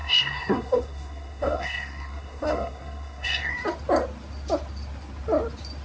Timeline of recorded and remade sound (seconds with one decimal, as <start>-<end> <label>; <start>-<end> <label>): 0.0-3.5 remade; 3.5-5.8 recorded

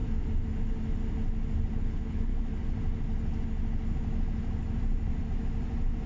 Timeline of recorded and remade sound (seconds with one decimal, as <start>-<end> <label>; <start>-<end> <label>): 0.0-1.8 recorded; 1.8-2.3 remade; 2.3-6.1 recorded

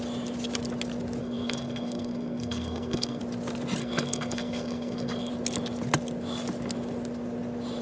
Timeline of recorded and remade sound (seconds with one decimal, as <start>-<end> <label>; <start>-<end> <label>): 0.0-1.2 recorded; 1.2-3.2 remade; 3.2-3.8 recorded; 3.8-5.3 remade; 5.3-7.8 recorded

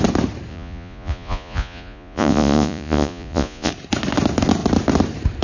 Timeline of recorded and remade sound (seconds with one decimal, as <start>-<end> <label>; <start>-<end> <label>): 0.0-0.5 recorded; 0.5-3.7 remade; 3.7-5.4 recorded

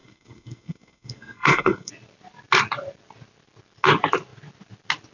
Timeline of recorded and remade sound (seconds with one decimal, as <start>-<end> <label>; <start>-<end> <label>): 0.0-1.9 remade; 1.9-5.1 recorded

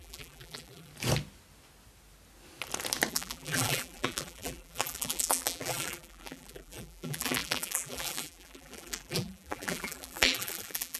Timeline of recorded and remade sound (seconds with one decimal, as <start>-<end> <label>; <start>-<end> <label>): 0.0-0.9 remade; 0.9-3.1 recorded; 3.1-11.0 remade

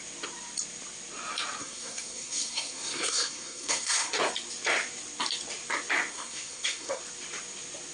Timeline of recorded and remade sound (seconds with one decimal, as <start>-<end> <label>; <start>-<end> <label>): 0.0-1.6 recorded; 1.6-4.1 remade; 4.1-6.1 recorded; 6.1-7.0 remade; 7.0-7.9 recorded

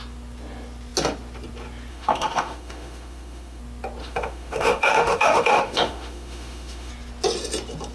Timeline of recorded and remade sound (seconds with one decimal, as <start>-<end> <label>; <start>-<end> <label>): 0.0-1.9 recorded; 1.9-3.6 remade; 3.6-4.0 recorded; 4.0-6.9 remade; 6.9-7.9 recorded